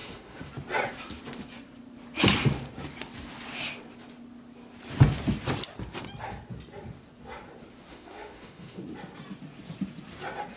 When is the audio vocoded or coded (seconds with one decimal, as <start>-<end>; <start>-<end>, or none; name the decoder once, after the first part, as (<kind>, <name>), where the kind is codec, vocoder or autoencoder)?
0.0-0.5 (autoencoder, DAC-VAE); 7.9-8.8